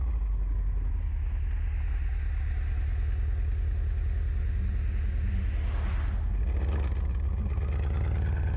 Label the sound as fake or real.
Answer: real